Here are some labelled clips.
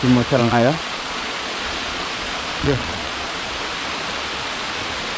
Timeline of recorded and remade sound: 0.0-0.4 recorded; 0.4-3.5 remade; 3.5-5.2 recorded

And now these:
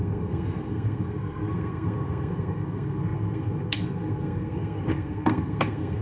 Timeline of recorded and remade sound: 0.0-6.0 remade

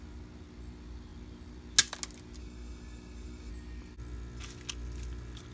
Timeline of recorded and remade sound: 0.0-2.4 recorded; 2.4-3.5 remade; 3.5-5.5 recorded

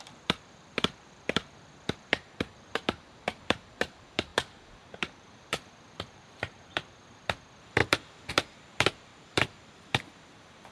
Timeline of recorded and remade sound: 0.0-10.7 remade

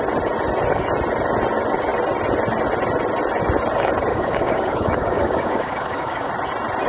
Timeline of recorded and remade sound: 0.0-4.1 recorded; 4.1-6.3 remade; 6.3-6.9 recorded

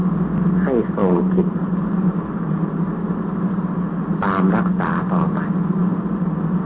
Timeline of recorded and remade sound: 0.0-1.0 recorded; 1.0-3.1 remade; 3.1-6.6 recorded